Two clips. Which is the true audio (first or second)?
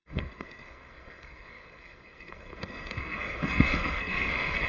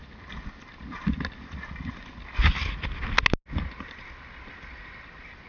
second